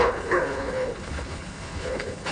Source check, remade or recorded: remade